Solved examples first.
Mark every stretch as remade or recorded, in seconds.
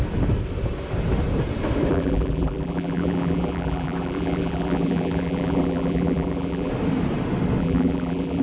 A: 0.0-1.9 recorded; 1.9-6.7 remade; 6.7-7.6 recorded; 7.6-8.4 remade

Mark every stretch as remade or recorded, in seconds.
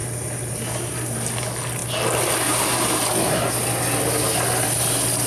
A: 0.0-5.3 recorded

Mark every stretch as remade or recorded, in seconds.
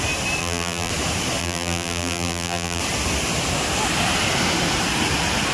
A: 0.0-0.4 recorded; 0.4-0.9 remade; 0.9-1.4 recorded; 1.4-2.8 remade; 2.8-5.5 recorded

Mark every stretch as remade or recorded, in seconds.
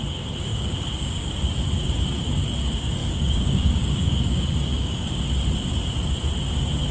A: 0.0-0.5 recorded; 0.5-1.3 remade; 1.3-3.0 recorded; 3.0-5.2 remade; 5.2-6.9 recorded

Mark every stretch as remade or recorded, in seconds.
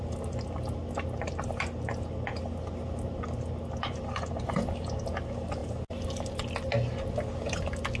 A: 0.0-8.0 recorded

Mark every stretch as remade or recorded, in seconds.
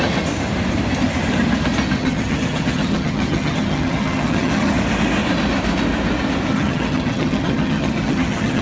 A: 0.0-2.0 recorded; 2.0-4.8 remade; 4.8-6.5 recorded; 6.5-8.6 remade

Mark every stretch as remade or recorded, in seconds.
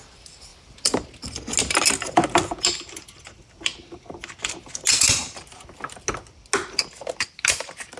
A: 0.0-8.0 recorded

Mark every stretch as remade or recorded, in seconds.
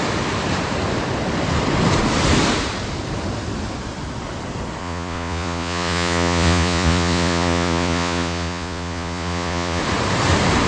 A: 0.0-4.8 recorded; 4.8-9.8 remade; 9.8-10.7 recorded